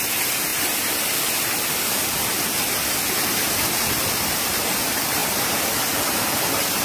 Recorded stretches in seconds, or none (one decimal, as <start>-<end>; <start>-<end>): 0.0-6.8